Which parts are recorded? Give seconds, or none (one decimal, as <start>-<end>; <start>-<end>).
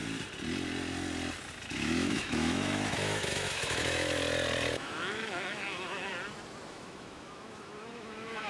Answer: 0.0-1.7; 4.2-4.7; 6.1-6.7